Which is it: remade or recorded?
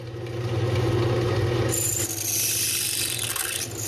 recorded